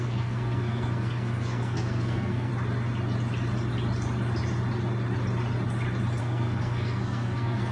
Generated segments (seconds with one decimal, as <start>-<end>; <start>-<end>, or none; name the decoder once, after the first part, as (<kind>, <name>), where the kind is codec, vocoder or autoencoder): 0.0-2.5 (codec, SNAC); 6.2-7.7